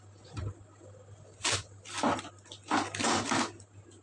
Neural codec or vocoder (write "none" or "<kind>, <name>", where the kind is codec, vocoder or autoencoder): none